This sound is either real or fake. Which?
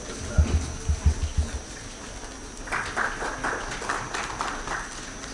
real